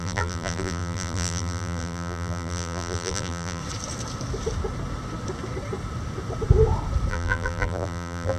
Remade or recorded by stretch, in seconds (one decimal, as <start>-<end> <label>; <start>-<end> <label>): 0.0-3.6 remade; 3.6-7.1 recorded; 7.1-8.4 remade